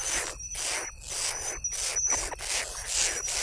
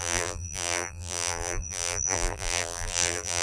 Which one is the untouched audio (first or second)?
first